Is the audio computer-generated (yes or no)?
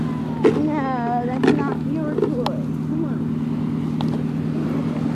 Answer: no